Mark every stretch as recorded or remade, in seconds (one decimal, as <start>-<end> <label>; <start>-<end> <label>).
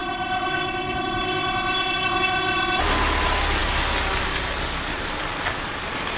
0.0-2.8 remade; 2.8-6.2 recorded